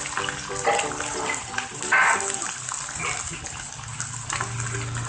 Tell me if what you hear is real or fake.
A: real